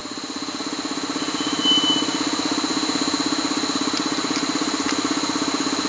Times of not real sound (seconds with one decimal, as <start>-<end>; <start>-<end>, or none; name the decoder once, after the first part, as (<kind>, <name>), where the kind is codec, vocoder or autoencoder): none